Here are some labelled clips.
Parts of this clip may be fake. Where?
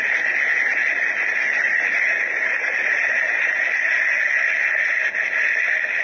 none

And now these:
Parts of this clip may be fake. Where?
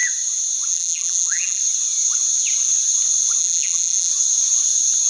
0.7-1.6 (vocoder, BigVGAN v2); 3.4-4.1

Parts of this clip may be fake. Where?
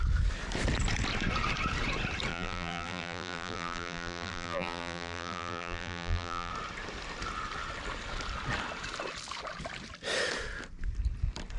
2.3-6.5 (vocoder, BigVGAN v2)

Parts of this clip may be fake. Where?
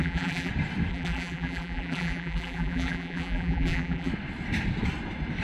0.0-0.5 (vocoder, BigVGAN v2); 0.9-4.1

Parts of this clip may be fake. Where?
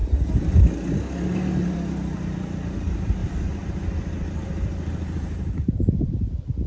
3.2-6.2 (vocoder, BigVGAN v2)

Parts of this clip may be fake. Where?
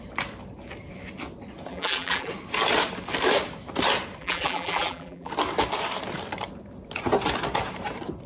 1.7-2.3 (vocoder, BigVGAN v2); 4.2-5.3